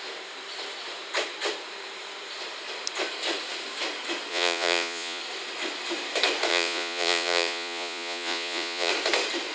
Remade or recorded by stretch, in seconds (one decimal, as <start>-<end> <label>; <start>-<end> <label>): 0.0-4.3 recorded; 4.3-5.2 remade; 5.2-6.5 recorded; 6.5-8.9 remade; 8.9-9.5 recorded